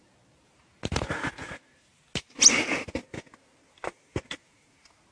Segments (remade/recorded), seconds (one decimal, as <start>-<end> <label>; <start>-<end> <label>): 0.0-5.1 recorded